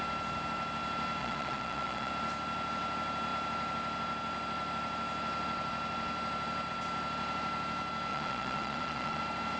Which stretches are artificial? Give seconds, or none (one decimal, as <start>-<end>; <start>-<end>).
1.2-2.1; 8.1-9.2